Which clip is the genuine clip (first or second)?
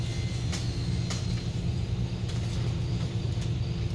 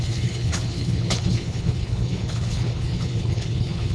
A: first